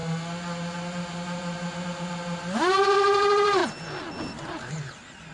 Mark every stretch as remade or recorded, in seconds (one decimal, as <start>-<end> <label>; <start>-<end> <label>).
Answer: 0.0-5.3 recorded